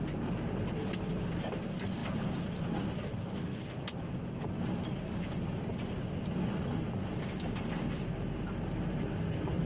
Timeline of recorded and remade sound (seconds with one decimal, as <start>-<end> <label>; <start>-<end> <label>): 0.0-9.7 recorded